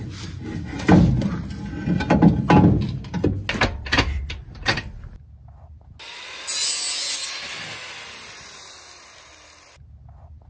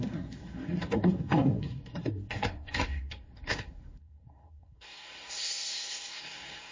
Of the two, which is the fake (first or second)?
second